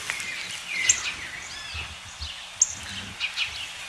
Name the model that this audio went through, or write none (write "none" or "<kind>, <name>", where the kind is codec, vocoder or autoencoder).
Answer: none